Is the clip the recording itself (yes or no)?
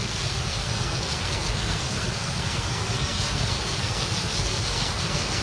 no